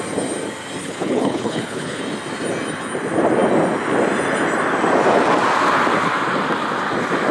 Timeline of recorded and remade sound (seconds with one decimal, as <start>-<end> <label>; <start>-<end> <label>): 0.0-0.8 recorded; 0.8-2.0 remade; 2.0-7.3 recorded